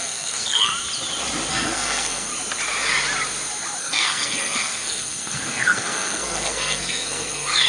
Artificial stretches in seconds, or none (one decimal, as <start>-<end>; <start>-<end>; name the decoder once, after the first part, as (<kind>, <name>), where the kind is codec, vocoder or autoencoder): 0.0-0.7 (codec, SNAC); 1.5-2.3; 3.8-7.7